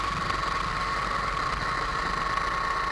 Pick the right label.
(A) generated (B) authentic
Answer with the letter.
B